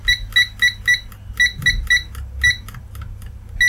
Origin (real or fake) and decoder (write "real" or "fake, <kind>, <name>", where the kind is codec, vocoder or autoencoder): real